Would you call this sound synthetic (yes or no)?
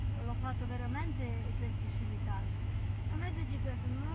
yes